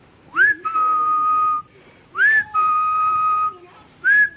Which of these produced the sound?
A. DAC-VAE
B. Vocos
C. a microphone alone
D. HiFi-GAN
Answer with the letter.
C